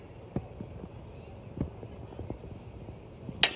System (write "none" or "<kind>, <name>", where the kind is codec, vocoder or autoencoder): none